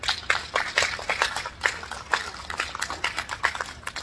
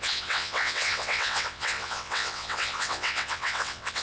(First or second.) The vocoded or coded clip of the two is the second